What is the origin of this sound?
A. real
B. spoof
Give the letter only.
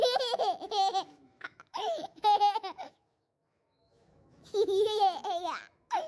B